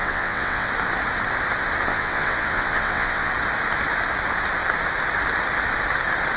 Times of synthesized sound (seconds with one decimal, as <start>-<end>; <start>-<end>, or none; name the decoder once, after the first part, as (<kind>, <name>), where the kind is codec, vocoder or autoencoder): 0.0-0.7 (vocoder, WaveNeXt); 1.9-3.3